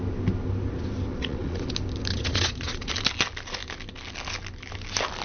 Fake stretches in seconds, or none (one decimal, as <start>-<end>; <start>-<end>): 1.1-1.7; 2.1-2.9